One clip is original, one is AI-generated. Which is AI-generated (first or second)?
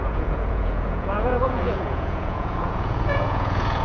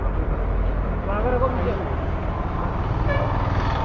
first